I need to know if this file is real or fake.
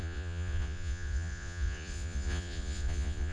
fake